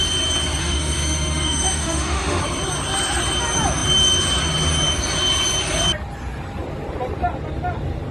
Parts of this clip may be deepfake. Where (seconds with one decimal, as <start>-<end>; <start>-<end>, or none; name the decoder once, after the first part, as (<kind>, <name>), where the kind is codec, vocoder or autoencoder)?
0.6-2.4 (autoencoder, DAC-VAE)